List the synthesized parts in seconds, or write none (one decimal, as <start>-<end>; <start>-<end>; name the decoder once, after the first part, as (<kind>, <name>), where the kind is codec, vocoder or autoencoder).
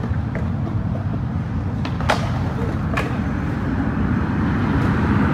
none